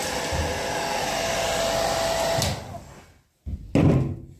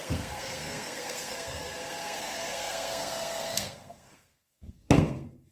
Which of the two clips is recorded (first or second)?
first